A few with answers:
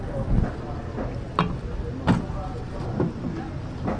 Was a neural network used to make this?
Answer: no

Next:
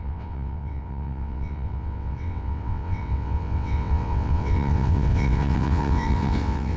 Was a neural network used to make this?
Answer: yes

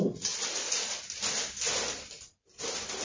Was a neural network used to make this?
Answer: no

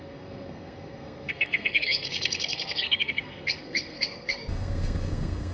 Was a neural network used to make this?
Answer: yes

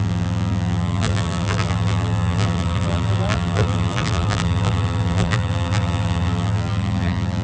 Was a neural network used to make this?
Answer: yes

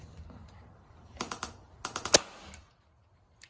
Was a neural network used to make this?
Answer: no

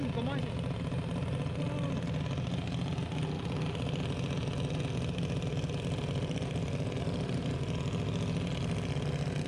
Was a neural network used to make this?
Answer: no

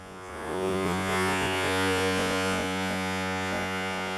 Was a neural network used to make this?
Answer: yes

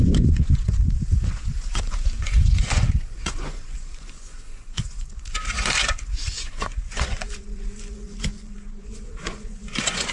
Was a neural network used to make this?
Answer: yes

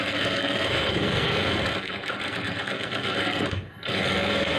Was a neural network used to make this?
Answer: yes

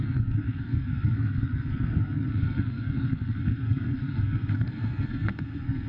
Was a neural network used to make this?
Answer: yes